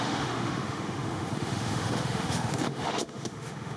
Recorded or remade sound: remade